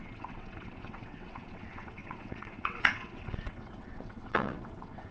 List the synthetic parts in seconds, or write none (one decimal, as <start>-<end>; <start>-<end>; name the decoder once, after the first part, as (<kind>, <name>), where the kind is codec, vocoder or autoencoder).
0.0-5.1 (vocoder, WaveNeXt)